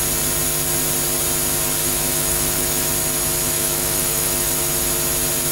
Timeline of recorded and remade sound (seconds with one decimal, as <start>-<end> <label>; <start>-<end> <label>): 0.0-1.8 recorded; 1.8-2.9 remade; 2.9-3.4 recorded; 3.4-4.5 remade; 4.5-5.5 recorded